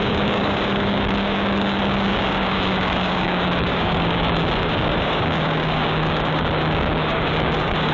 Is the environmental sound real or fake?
fake